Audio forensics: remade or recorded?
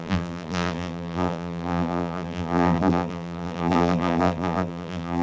remade